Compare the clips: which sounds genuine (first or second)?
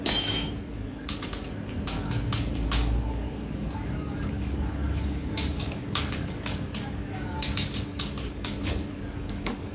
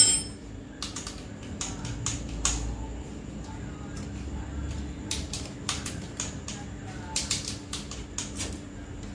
second